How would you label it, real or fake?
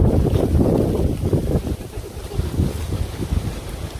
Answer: real